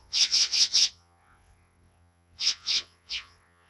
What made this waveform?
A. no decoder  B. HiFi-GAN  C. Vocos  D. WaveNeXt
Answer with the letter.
D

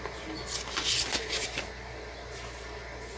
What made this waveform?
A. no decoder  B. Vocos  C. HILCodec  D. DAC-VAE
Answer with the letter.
A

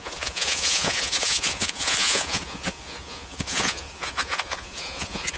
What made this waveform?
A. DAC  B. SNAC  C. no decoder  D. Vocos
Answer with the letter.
D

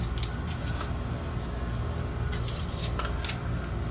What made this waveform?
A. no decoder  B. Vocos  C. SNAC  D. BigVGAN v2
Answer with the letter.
A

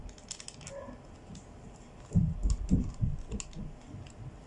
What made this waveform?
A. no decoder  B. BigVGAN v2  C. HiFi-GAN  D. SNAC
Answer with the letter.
A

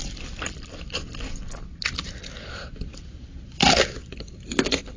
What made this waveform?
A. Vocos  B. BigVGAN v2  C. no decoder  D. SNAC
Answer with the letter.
B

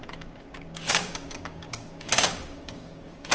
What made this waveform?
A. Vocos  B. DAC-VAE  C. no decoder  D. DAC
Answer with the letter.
D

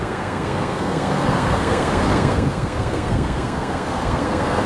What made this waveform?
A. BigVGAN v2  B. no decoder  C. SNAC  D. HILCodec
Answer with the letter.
C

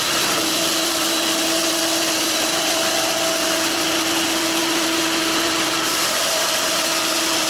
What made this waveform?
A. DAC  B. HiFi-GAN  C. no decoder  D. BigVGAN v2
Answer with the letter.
C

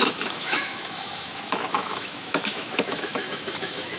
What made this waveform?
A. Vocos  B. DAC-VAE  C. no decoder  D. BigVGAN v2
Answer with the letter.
B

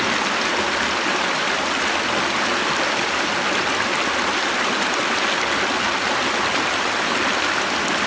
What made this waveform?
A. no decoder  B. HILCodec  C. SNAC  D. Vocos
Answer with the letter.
A